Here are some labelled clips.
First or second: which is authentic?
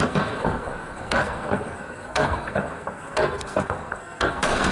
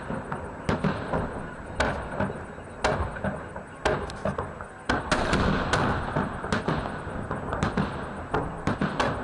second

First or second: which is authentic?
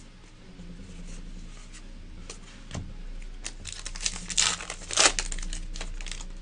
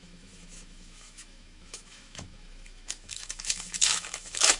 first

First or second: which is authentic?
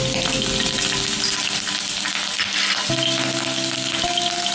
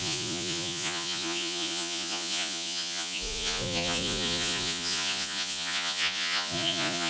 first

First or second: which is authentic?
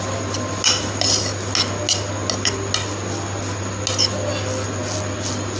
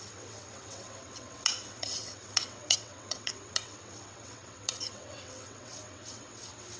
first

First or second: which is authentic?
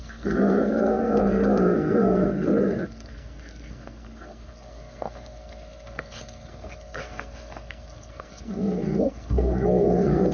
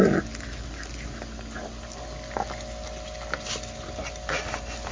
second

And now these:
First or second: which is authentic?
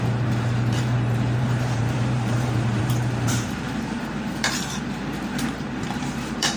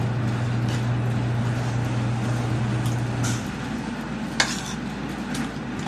second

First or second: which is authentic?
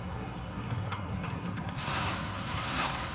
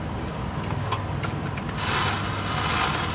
second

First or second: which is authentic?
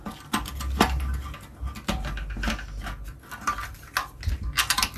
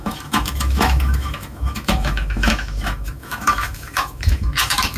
first